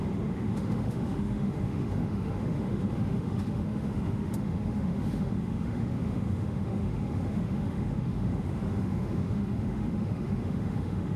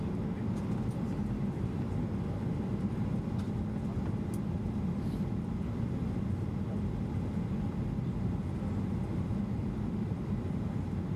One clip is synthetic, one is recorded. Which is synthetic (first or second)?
first